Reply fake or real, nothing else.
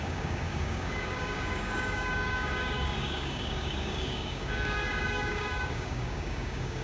fake